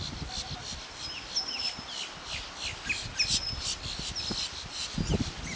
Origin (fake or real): real